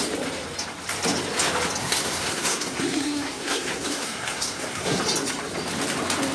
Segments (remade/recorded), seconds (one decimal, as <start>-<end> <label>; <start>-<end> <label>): 0.0-1.8 recorded; 1.8-5.0 remade; 5.0-6.3 recorded